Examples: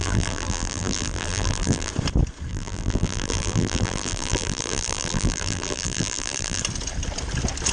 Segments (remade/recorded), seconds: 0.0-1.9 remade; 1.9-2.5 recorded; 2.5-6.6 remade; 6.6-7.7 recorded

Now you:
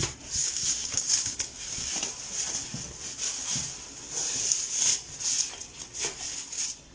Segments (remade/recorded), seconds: 0.0-0.4 recorded; 0.4-1.9 remade; 1.9-6.9 recorded

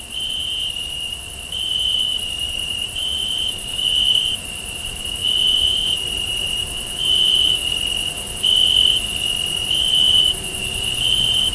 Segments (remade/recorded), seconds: 0.0-7.6 remade; 7.6-9.6 recorded; 9.6-11.5 remade

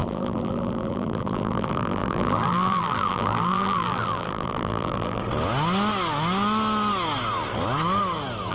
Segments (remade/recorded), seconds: 0.0-5.2 remade; 5.2-8.5 recorded

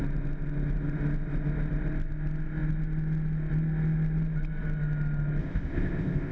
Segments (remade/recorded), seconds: 0.0-5.4 recorded; 5.4-6.3 remade